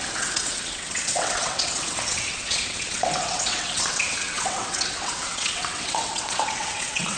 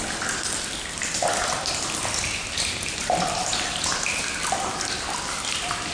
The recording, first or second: second